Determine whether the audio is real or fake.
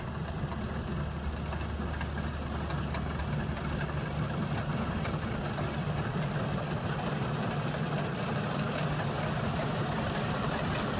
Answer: real